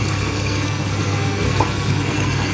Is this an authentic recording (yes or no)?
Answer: no